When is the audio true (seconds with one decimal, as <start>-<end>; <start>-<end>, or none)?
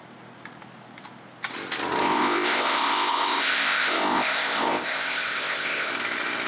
0.0-2.0; 5.9-6.5